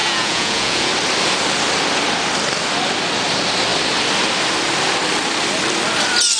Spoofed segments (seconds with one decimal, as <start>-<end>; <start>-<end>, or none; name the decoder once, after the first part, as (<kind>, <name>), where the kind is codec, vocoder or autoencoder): 0.0-0.9 (vocoder, Vocos)